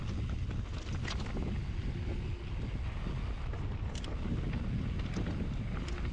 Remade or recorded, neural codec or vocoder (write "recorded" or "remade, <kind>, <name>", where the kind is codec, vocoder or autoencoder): recorded